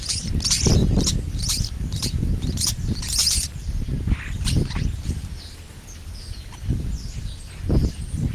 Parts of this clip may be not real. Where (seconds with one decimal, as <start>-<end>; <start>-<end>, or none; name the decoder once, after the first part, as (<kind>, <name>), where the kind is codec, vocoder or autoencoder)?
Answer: 0.8-1.4 (vocoder, BigVGAN v2)